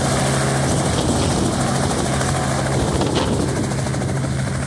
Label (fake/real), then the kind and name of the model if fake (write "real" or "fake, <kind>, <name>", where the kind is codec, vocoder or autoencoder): real